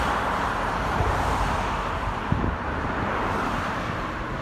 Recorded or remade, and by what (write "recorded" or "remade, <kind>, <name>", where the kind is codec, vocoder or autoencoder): remade, vocoder, BigVGAN v2